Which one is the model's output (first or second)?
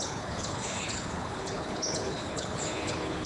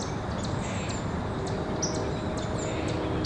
first